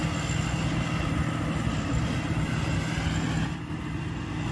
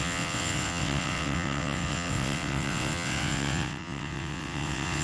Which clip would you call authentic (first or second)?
first